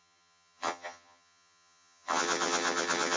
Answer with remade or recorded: remade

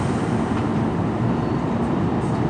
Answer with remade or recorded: remade